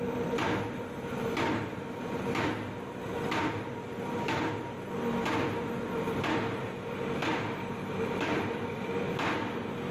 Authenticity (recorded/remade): recorded